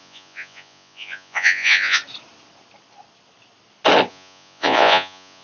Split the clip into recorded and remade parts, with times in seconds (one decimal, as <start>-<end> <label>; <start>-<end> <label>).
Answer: 0.0-2.0 remade; 2.0-4.1 recorded; 4.1-5.4 remade